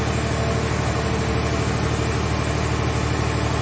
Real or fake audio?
real